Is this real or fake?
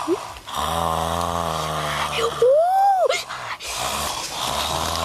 real